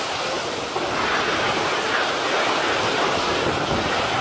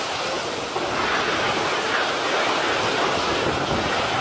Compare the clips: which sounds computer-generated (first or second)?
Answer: first